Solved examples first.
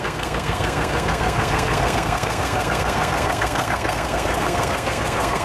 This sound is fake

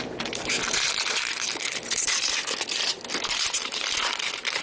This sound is fake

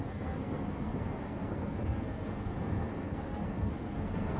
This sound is fake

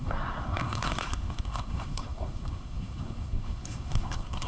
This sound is fake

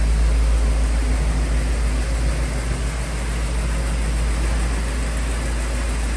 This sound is real